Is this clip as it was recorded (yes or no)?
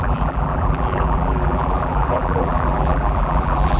no